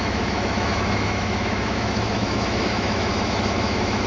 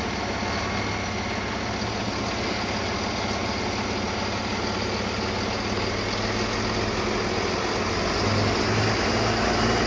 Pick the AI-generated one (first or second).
first